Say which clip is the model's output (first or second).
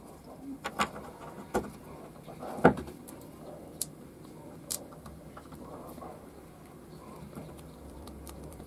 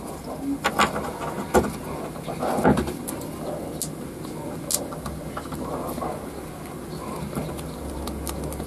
first